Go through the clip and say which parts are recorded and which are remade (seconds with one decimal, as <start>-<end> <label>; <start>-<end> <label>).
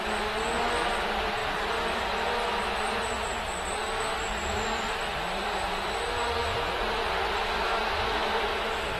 0.0-8.1 recorded; 8.1-9.0 remade